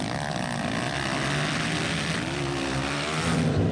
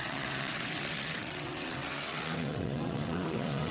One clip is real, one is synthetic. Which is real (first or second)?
first